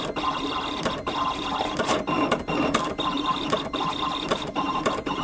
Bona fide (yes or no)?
yes